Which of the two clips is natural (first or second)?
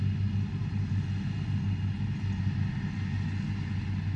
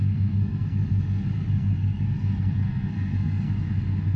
first